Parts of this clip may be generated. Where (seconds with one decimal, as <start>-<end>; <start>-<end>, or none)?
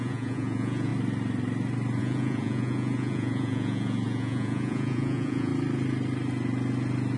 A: 0.0-0.9; 2.0-5.5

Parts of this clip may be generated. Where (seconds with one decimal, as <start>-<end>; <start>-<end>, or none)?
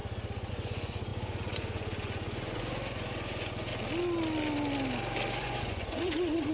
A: 0.5-3.7; 5.4-6.5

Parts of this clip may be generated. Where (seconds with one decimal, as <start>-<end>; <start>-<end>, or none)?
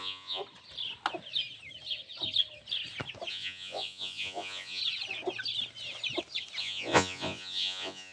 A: 0.0-0.4; 3.3-4.8; 6.6-8.1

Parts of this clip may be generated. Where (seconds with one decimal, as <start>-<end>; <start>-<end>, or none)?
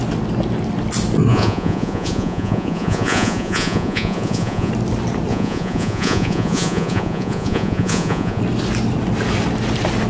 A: 1.3-4.7; 5.3-8.4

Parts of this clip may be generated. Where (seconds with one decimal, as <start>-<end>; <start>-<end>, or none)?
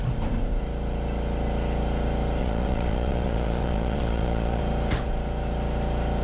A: 2.4-4.6